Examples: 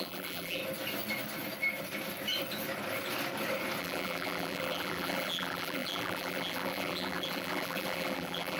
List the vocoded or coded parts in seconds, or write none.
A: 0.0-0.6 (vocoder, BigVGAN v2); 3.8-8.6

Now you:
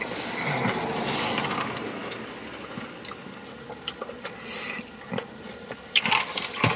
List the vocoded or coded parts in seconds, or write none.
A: none

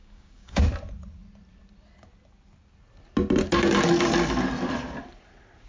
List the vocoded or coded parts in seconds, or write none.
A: 0.0-0.6 (codec, DAC)